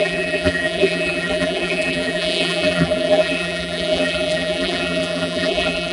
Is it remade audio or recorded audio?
remade